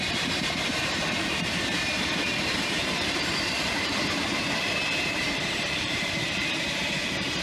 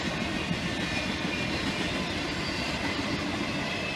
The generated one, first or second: first